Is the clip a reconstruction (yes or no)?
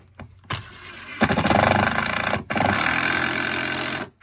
no